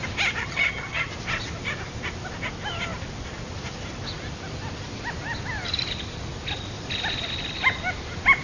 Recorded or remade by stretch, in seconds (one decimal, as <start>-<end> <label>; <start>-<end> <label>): 0.0-0.4 recorded; 0.4-1.1 remade; 1.1-8.4 recorded